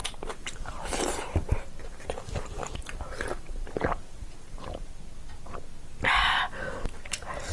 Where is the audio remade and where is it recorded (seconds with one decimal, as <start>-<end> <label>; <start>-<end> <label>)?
0.0-1.5 remade; 1.5-1.9 recorded; 1.9-4.9 remade; 4.9-7.5 recorded